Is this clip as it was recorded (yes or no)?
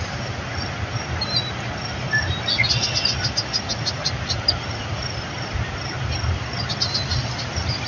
yes